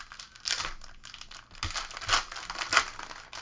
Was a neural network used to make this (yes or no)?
no